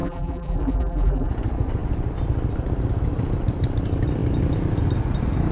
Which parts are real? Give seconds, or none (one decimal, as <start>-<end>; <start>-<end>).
1.3-5.5